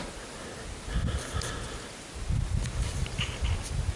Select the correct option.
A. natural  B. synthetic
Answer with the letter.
A